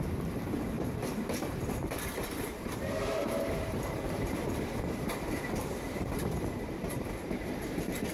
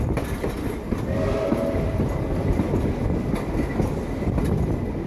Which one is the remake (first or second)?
first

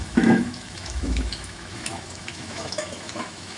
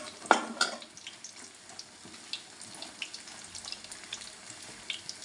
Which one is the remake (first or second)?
first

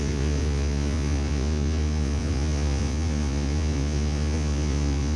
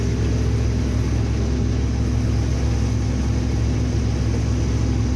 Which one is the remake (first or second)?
first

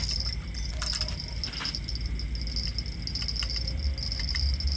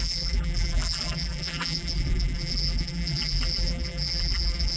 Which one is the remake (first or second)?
second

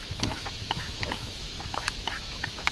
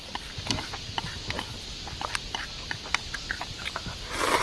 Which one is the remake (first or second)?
first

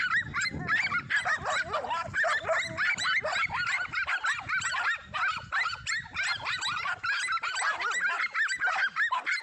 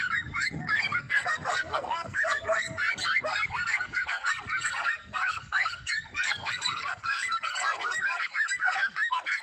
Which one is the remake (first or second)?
second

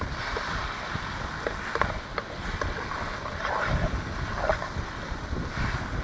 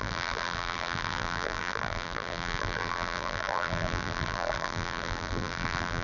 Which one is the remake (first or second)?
second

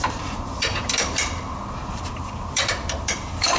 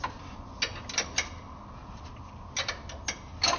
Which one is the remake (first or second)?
first